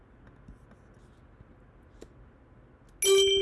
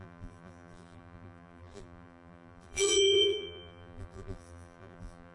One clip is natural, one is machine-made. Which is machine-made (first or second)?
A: second